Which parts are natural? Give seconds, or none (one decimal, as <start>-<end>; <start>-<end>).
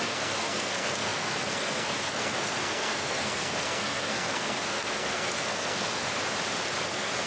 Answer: 6.1-6.8